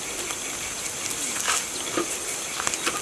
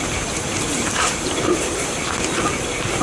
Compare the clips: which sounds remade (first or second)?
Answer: second